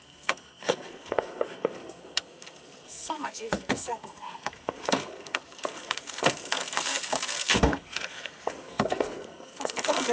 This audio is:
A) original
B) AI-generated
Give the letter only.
B